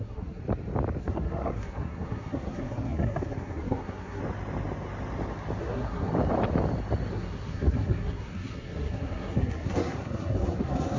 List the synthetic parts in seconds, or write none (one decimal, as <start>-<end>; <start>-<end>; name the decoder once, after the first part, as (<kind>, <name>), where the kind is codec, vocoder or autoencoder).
0.0-0.4 (codec, SNAC); 1.0-4.2; 5.6-6.1; 7.1-11.0